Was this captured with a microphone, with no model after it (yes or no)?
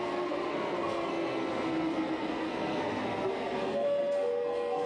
no